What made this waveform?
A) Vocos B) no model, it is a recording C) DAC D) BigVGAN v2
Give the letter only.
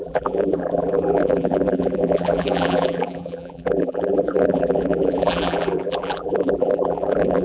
D